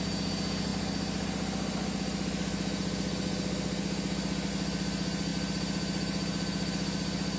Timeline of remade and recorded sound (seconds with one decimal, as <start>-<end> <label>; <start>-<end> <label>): 0.0-7.4 recorded